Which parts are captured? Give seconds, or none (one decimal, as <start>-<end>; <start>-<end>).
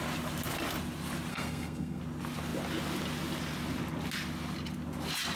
0.0-1.3; 2.0-5.4